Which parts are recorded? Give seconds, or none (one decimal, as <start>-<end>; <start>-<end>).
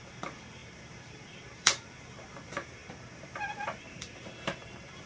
none